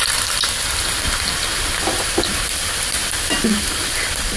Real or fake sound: fake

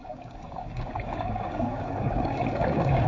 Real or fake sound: fake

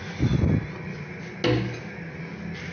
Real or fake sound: real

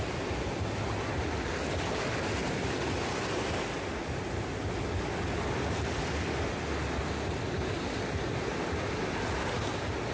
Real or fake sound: real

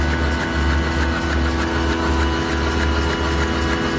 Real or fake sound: real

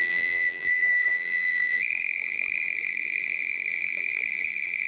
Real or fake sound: fake